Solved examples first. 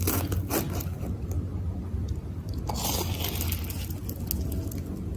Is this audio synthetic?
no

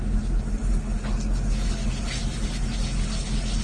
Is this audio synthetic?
no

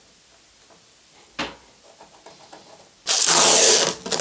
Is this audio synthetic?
no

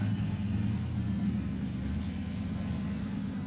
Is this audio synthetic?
yes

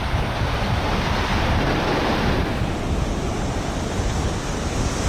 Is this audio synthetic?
no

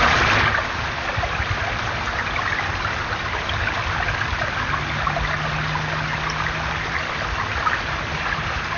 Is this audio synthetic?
no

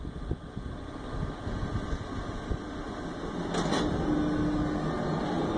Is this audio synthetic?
no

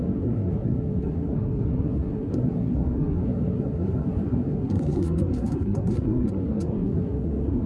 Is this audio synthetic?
yes